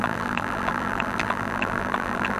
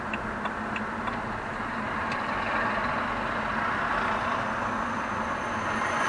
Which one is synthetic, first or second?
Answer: first